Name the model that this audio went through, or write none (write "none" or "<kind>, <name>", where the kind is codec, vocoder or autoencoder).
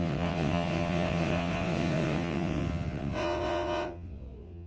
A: vocoder, WaveNeXt